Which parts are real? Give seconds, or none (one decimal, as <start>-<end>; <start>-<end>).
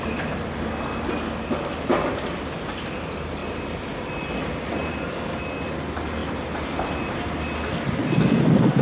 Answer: 0.0-8.8